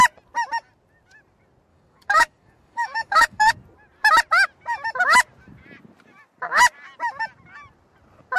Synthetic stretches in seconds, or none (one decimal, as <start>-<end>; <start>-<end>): 1.7-3.5